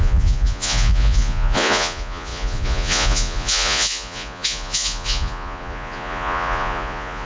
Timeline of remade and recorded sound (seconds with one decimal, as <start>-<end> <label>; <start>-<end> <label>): 0.0-7.3 remade

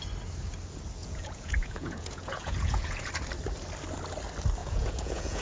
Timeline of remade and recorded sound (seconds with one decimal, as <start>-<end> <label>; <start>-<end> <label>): 0.0-1.0 recorded; 1.0-3.1 remade; 3.1-4.6 recorded; 4.6-5.4 remade